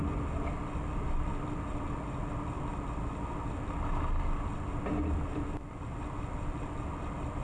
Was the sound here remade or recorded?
recorded